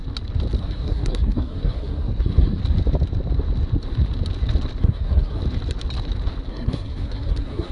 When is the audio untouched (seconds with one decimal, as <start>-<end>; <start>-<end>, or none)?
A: 0.0-0.6; 2.6-4.8; 5.4-6.5